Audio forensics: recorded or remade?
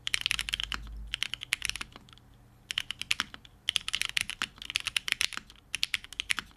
recorded